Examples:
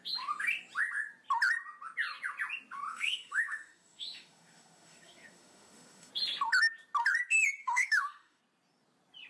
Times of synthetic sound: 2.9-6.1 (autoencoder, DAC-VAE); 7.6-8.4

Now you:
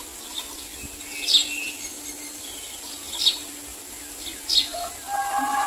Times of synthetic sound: none

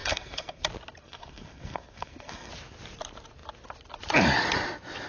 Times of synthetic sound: 0.0-0.6 (codec, SNAC); 1.0-2.5

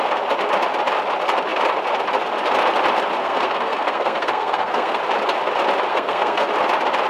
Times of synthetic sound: 3.2-5.0 (codec, SNAC); 5.9-6.5

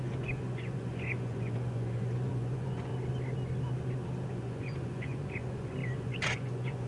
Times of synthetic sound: 0.0-2.9 (vocoder, Vocos); 4.3-6.9

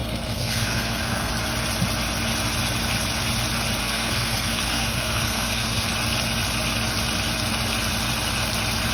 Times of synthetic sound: 0.0-1.3 (codec, SNAC); 3.8-5.9

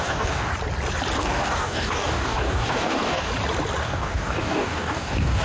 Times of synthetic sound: 0.0-0.5 (codec, DAC); 1.2-3.3; 3.8-5.4

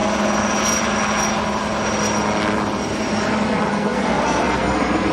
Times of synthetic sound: 3.7-5.1 (codec, SNAC)